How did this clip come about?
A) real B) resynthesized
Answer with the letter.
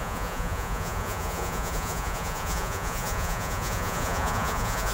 B